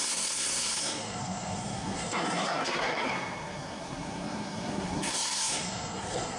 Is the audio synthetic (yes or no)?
yes